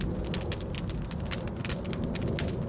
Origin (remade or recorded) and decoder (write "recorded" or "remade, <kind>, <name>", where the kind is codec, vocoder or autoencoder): recorded